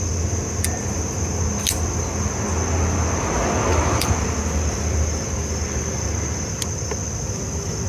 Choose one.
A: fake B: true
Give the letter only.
B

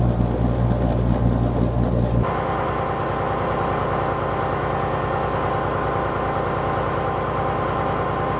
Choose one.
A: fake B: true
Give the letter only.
B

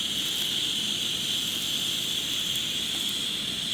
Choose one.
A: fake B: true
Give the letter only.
B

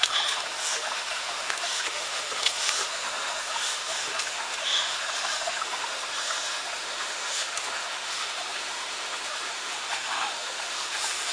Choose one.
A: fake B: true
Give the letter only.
A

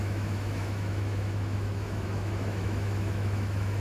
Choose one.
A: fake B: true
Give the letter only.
A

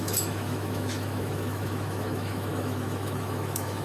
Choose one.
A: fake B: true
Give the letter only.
A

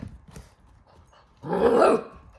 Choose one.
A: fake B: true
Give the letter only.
B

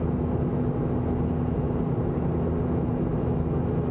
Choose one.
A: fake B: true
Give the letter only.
B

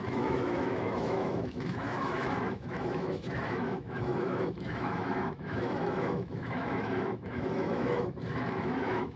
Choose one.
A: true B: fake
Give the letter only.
B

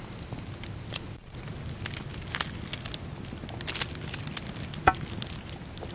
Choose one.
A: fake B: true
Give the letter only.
B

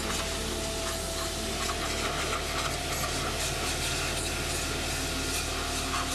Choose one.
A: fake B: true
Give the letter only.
B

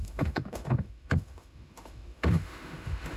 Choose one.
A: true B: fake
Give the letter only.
B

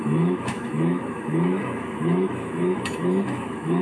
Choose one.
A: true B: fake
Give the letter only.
B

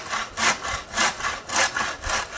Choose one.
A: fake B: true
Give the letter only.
B